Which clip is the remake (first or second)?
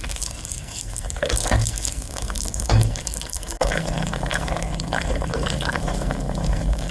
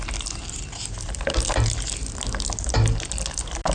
first